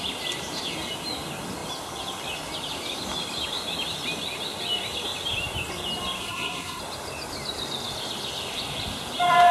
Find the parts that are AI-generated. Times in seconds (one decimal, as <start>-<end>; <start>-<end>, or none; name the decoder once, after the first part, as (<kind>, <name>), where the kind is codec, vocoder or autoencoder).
6.2-6.8 (codec, SNAC)